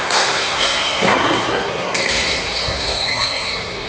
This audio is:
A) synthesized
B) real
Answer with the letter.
A